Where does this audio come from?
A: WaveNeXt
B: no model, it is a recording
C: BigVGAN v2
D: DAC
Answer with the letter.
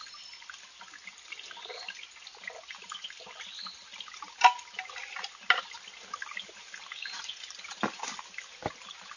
B